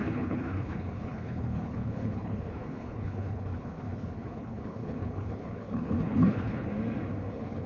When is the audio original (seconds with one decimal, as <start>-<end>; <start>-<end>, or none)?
6.7-7.3